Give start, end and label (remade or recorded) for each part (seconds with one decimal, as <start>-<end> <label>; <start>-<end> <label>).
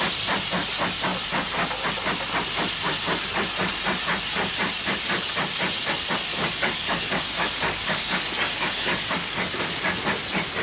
0.0-6.3 recorded; 6.3-9.6 remade; 9.6-10.6 recorded